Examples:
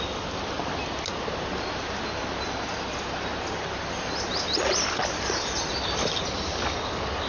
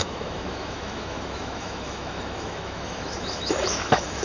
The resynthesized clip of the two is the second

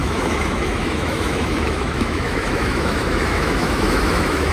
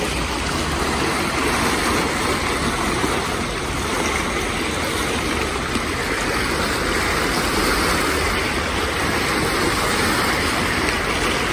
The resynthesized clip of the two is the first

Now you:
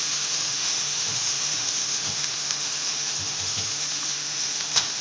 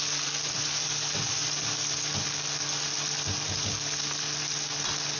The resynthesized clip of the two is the first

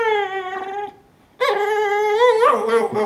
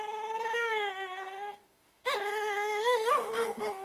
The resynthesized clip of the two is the second